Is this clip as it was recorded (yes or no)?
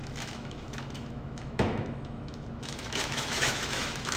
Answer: no